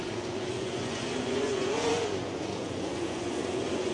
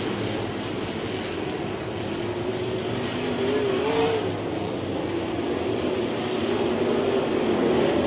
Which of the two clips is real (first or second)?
second